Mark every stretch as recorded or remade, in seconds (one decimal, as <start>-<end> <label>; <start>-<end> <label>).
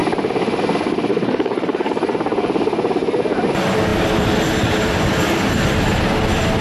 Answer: 0.0-1.1 recorded; 1.1-1.9 remade; 1.9-6.6 recorded